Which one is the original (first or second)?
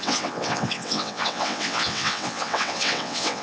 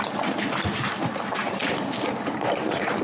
second